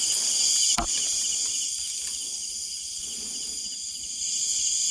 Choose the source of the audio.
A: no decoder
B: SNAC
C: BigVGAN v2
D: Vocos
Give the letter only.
A